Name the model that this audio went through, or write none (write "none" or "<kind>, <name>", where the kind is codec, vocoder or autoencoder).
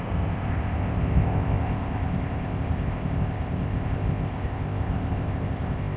codec, ZipCodec